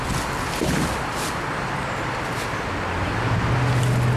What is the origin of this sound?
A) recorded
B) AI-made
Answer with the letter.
A